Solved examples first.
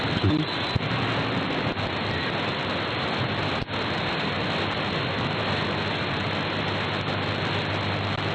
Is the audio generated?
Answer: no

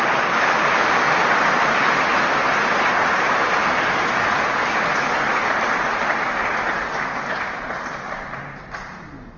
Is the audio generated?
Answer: no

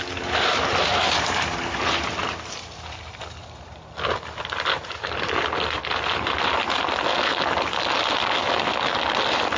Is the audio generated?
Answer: no